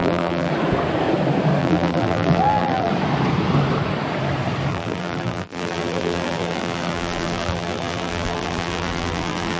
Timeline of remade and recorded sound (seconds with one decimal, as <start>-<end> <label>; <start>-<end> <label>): 0.0-0.5 remade; 0.5-1.6 recorded; 1.6-2.9 remade; 2.9-4.7 recorded; 4.7-9.6 remade